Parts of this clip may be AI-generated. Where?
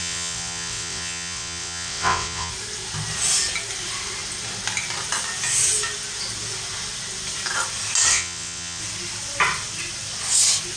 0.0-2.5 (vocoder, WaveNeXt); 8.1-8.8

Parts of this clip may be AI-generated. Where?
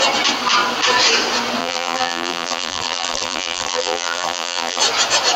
1.6-4.8 (vocoder, BigVGAN v2)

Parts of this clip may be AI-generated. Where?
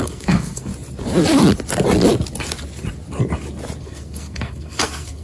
0.0-0.7 (codec, SNAC); 3.8-5.2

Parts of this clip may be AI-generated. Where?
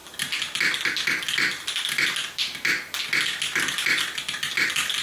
none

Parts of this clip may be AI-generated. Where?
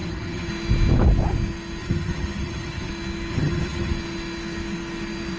0.0-0.5 (vocoder, HiFi-GAN); 1.8-2.9; 3.3-3.9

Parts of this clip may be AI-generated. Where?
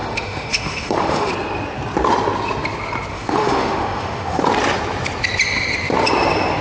0.0-1.3 (autoencoder, DAC-VAE); 3.1-4.4